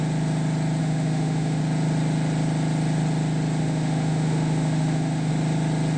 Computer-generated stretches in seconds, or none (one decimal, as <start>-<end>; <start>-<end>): 0.8-1.6; 3.6-5.3